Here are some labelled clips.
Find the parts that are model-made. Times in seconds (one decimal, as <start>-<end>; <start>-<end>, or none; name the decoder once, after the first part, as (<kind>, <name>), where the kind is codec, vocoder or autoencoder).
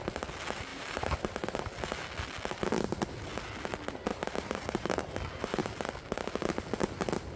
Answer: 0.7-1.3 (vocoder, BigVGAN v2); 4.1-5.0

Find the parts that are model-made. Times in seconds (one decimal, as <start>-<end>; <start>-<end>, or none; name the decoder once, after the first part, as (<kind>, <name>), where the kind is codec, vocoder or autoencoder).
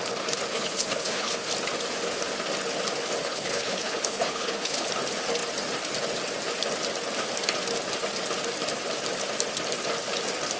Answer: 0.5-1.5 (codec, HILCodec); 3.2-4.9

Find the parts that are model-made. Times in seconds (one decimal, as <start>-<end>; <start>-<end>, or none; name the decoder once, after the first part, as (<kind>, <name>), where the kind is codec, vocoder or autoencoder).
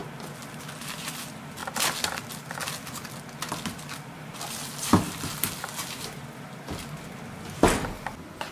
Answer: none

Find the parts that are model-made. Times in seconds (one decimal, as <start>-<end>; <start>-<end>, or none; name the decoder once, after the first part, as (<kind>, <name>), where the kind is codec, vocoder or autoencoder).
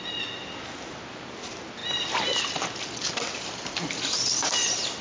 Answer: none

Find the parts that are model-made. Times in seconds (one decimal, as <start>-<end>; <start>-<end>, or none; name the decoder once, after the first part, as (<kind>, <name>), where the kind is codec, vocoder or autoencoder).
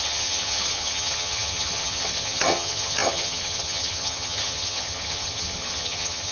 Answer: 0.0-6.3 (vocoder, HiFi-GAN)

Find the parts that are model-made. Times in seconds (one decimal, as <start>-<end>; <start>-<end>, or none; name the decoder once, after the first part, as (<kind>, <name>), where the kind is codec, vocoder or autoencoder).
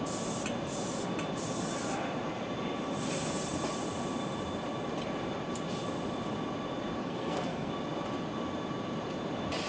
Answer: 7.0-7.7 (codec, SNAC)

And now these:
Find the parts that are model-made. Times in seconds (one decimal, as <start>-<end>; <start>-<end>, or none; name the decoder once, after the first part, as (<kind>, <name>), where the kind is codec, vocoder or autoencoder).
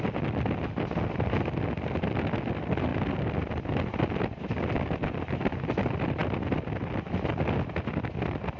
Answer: none